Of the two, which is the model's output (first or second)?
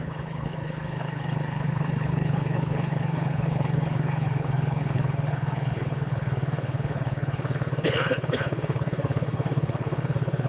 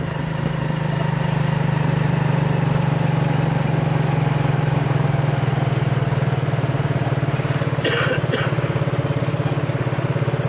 first